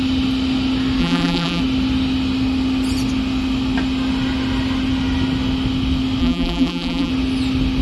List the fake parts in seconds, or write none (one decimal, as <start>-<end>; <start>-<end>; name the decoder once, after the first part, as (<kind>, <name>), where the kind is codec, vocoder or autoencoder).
1.0-1.6 (vocoder, BigVGAN v2); 6.2-7.1